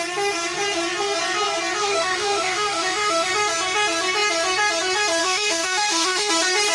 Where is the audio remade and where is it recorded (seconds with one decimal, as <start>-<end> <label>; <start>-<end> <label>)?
0.0-1.8 recorded; 1.8-3.3 remade; 3.3-5.2 recorded; 5.2-6.3 remade; 6.3-6.7 recorded